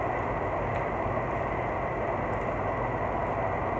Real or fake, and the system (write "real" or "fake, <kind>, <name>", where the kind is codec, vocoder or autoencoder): real